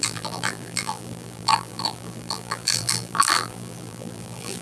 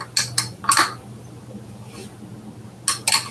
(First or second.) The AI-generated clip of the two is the first